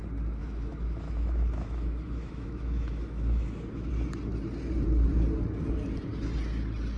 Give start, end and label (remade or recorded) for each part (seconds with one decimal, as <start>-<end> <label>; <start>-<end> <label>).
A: 0.0-0.4 recorded; 0.4-3.9 remade; 3.9-7.0 recorded